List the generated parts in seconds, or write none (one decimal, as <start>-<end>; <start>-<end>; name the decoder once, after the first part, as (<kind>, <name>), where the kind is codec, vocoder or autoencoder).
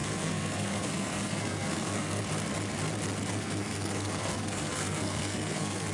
0.0-2.2 (codec, SNAC); 3.3-5.9